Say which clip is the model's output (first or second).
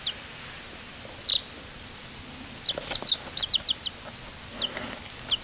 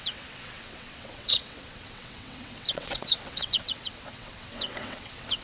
second